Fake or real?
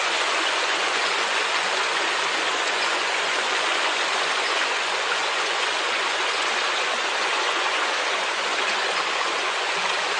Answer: fake